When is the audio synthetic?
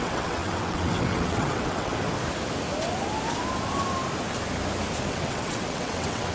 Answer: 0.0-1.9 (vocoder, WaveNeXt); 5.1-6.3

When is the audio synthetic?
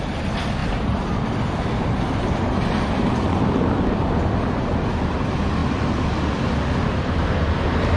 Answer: none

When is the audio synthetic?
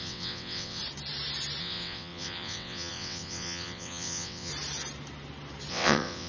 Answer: 0.0-0.8 (vocoder, WaveNeXt); 1.6-4.5; 5.7-6.3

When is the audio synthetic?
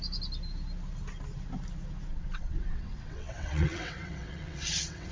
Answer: 2.1-5.1 (vocoder, WaveNeXt)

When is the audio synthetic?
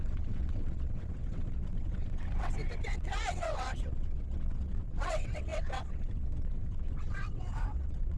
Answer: 0.0-8.2 (vocoder, WaveNeXt)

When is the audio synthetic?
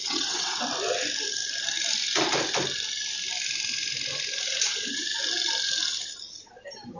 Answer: 0.0-0.6 (vocoder, WaveNeXt)